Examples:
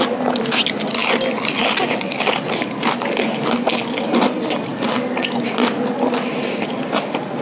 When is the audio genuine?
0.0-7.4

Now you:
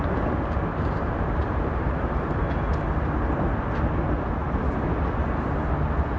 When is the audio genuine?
0.0-0.7; 2.3-6.2

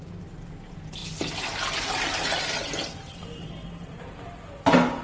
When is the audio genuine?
0.0-5.0

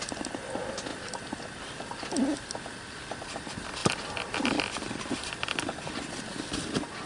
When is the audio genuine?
0.0-7.1

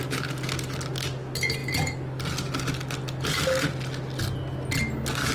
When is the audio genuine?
0.0-5.3